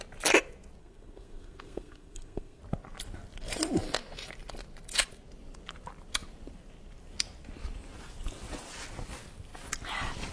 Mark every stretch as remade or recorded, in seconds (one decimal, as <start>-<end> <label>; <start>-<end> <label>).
0.0-0.8 recorded; 0.8-2.6 remade; 2.6-10.3 recorded